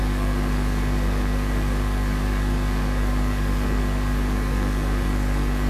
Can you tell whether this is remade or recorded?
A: remade